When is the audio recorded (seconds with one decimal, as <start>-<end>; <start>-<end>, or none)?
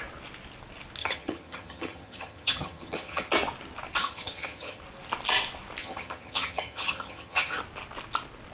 0.0-1.0; 3.3-4.0; 4.8-5.8; 7.6-8.5